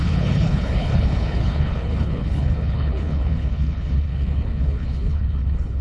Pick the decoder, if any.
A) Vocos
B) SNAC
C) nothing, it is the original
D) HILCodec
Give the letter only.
D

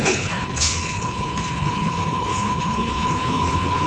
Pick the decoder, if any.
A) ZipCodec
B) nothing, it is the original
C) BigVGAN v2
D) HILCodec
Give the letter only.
D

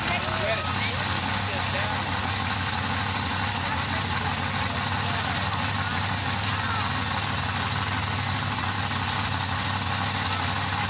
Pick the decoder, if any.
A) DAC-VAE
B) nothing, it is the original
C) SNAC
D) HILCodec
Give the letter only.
B